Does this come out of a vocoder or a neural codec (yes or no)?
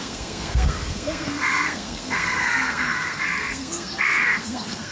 yes